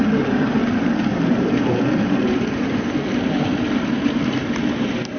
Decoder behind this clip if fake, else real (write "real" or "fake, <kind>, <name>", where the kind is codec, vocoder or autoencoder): fake, vocoder, BigVGAN v2